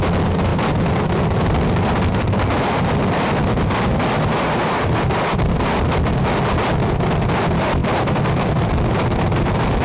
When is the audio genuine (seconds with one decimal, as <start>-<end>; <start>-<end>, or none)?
0.0-0.5; 2.8-4.6; 5.5-7.8; 8.7-9.8